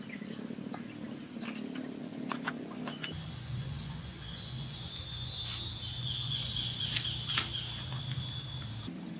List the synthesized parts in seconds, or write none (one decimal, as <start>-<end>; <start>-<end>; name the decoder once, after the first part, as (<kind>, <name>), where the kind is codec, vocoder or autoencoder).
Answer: 2.0-5.4 (vocoder, Vocos); 5.9-6.8